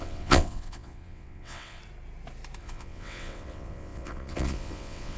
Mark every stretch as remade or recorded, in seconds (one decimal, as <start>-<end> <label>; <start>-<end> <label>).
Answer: 0.0-1.8 remade; 1.8-2.6 recorded; 2.6-5.2 remade